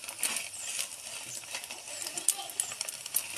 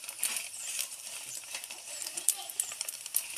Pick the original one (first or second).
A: first